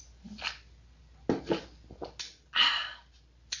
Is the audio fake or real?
real